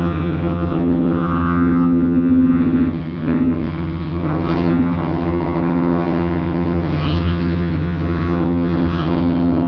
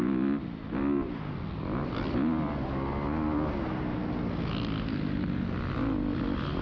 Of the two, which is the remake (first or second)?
first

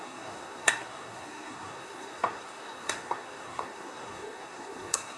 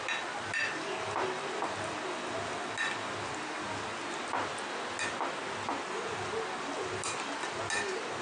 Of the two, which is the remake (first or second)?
first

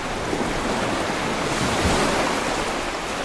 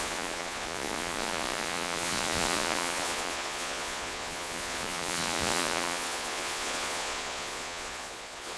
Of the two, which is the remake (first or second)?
second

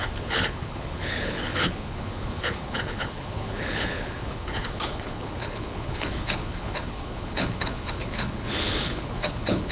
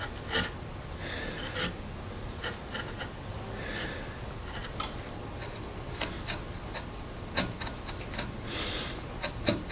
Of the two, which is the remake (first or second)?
first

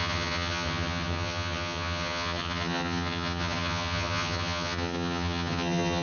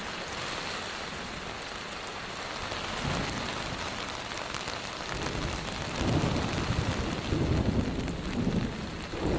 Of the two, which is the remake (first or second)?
first